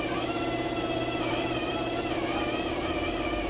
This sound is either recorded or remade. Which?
remade